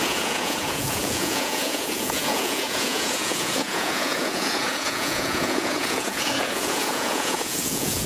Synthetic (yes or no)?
yes